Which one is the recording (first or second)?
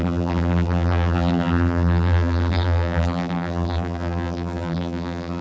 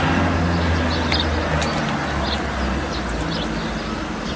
second